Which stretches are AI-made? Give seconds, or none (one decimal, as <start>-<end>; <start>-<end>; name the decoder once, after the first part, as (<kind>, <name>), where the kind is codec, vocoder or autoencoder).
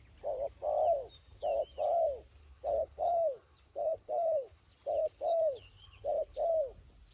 2.4-4.6 (codec, HILCodec); 5.0-6.5